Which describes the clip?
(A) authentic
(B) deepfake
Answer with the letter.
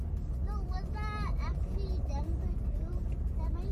A